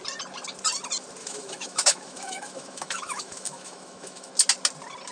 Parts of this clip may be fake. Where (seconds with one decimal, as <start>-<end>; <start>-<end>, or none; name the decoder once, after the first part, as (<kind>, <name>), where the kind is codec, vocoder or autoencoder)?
1.2-4.3 (autoencoder, DAC-VAE)